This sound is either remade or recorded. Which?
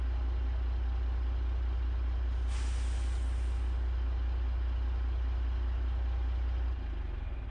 recorded